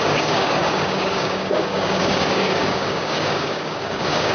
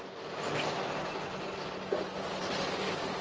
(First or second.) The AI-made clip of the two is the first